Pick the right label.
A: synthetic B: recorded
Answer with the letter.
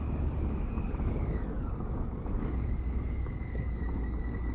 A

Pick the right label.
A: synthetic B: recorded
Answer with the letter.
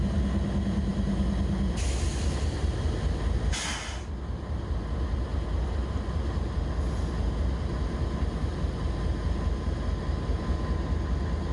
B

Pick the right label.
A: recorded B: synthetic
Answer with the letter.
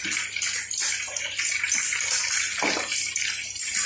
A